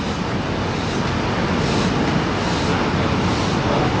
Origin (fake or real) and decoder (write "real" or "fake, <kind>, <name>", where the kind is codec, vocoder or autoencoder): real